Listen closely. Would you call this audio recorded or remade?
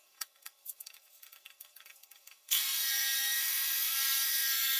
remade